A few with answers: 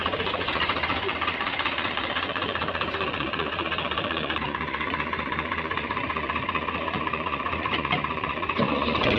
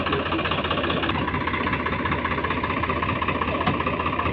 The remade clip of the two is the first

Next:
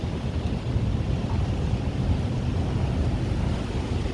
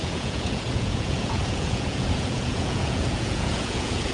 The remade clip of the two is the second